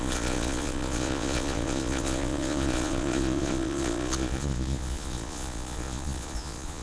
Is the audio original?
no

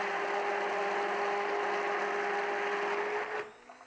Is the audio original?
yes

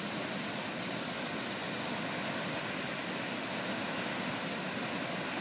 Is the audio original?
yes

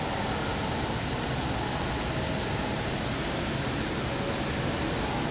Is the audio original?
yes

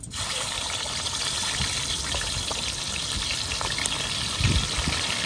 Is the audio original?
yes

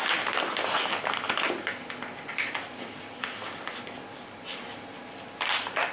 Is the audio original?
yes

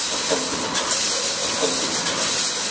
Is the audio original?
yes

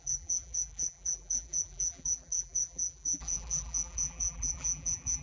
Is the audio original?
no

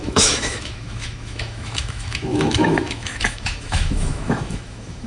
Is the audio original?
no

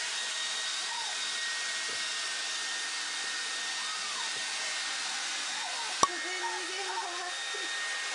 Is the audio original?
yes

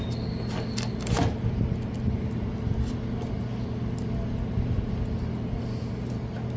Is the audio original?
yes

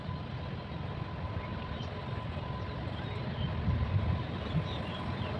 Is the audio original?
yes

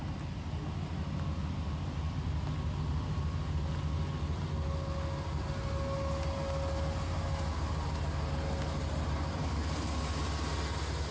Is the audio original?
yes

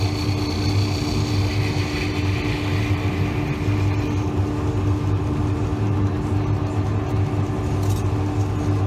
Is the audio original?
yes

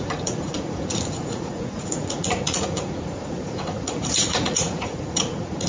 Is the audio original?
no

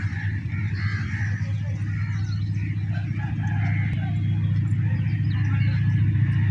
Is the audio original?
yes